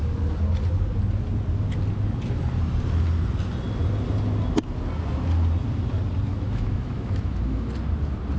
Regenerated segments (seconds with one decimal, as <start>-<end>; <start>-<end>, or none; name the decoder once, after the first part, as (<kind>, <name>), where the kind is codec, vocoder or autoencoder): 6.3-7.7 (autoencoder, DAC-VAE)